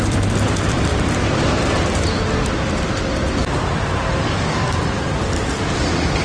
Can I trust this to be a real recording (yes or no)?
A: yes